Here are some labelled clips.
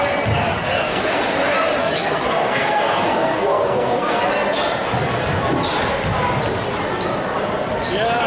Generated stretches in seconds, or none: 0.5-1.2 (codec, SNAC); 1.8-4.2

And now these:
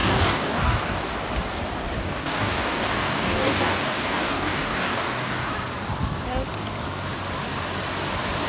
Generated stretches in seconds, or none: 0.0-1.1 (codec, DAC); 2.0-5.5

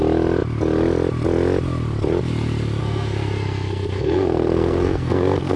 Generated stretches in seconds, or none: 2.8-5.6 (codec, SNAC)

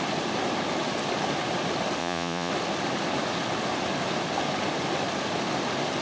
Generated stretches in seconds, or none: 2.0-2.5 (vocoder, Vocos)

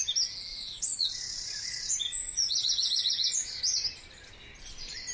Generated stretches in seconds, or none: 0.5-3.6 (vocoder, Vocos)

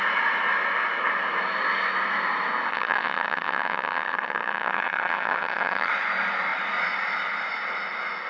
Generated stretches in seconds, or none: 2.7-5.9 (vocoder, HiFi-GAN)

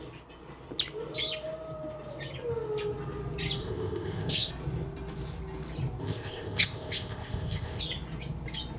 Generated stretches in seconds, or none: 3.6-4.5 (codec, ZipCodec); 6.0-7.8